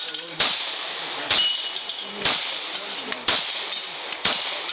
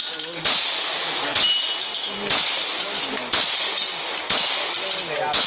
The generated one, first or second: first